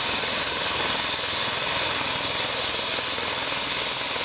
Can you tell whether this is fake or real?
real